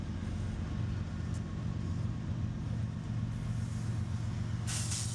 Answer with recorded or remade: recorded